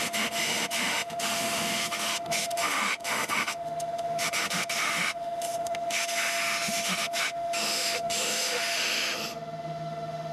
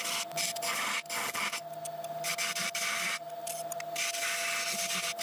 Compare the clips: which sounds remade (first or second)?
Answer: first